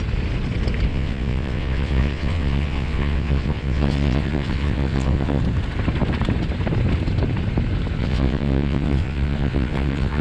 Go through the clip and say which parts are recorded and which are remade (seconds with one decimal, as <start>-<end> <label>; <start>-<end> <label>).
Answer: 0.0-0.9 recorded; 0.9-5.4 remade; 5.4-8.0 recorded; 8.0-10.2 remade